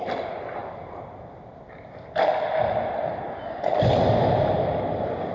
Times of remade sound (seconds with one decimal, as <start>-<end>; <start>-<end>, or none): none